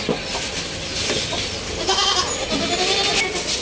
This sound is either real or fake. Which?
real